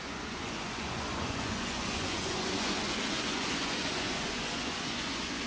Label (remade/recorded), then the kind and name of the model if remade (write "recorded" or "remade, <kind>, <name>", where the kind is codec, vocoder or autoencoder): remade, vocoder, Vocos